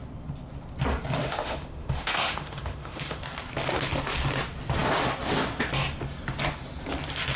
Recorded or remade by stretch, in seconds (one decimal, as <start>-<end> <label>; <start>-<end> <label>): 0.0-1.2 recorded; 1.2-3.2 remade; 3.2-7.4 recorded